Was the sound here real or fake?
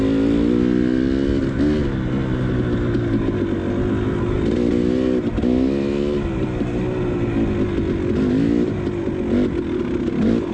real